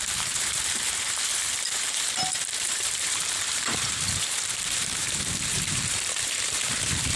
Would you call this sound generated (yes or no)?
yes